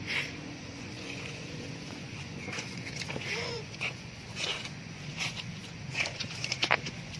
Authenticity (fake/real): fake